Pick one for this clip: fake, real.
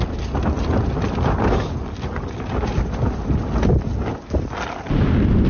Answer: real